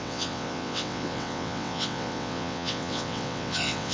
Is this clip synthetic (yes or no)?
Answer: yes